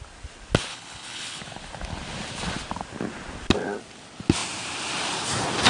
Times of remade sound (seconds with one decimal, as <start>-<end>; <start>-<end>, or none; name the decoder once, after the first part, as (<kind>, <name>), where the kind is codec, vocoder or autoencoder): 0.7-1.4 (codec, HILCodec)